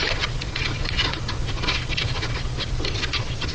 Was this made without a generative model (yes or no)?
no